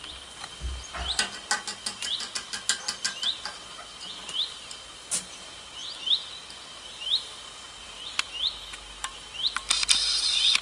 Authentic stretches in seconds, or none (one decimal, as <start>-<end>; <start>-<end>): 0.0-10.6